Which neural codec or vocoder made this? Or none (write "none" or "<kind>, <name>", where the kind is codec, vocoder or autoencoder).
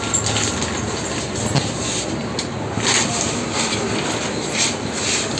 none